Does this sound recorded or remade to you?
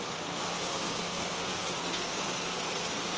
remade